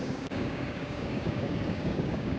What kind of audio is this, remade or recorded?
remade